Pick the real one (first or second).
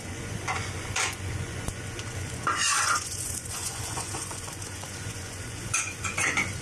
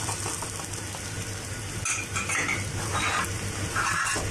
second